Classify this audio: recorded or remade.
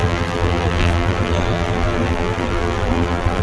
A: remade